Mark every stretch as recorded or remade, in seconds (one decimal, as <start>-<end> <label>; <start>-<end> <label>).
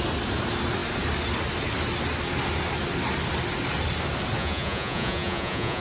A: 0.0-4.4 recorded; 4.4-5.8 remade